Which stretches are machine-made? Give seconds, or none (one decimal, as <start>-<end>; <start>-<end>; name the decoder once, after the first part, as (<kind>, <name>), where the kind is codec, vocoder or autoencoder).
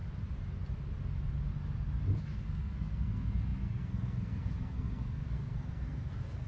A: 2.2-6.5 (codec, SNAC)